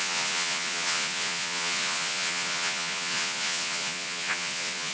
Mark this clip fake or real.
fake